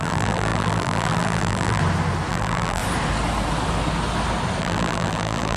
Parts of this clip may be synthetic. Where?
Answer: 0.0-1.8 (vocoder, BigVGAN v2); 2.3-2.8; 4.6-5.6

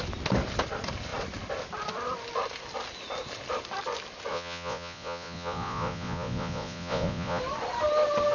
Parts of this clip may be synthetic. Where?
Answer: 4.3-7.4 (vocoder, Vocos)